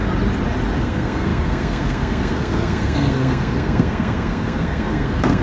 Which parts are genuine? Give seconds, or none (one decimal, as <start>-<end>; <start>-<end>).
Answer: 0.0-0.8